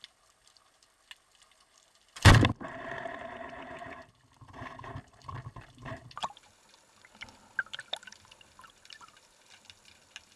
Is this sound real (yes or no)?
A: yes